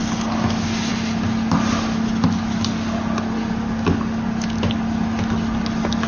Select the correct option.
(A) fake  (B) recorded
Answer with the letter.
B